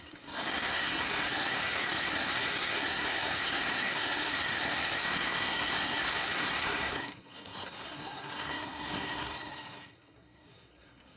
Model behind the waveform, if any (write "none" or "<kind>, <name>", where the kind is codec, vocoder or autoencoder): codec, SNAC